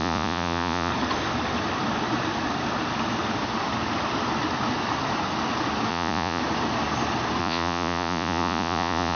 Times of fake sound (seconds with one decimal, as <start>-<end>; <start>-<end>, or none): 0.0-0.9; 5.9-6.4; 7.4-9.2